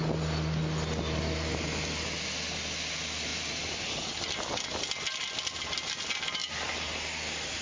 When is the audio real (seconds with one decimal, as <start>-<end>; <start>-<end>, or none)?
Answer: 0.0-7.6